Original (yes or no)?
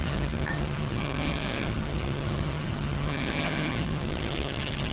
no